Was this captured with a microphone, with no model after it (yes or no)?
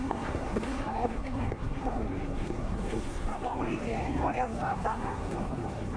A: no